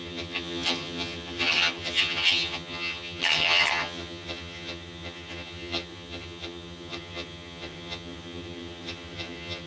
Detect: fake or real fake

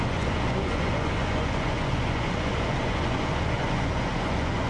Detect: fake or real fake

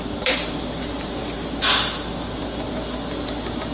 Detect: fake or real real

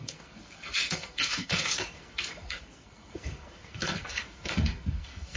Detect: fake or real fake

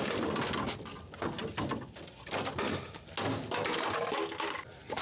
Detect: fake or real real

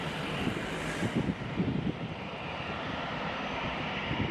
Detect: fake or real fake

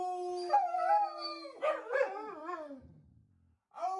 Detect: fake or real real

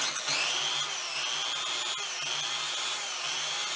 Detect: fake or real real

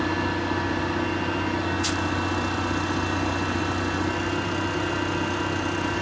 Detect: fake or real real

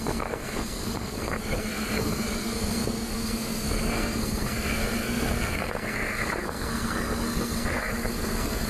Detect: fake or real fake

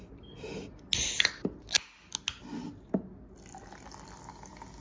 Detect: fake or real real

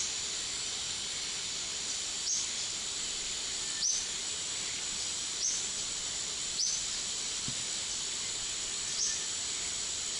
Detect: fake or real real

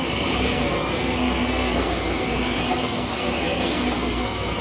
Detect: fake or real fake